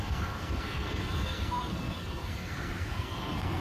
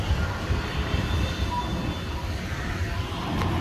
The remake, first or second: first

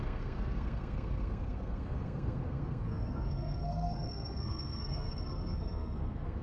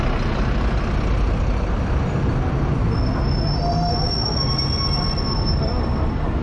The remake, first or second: first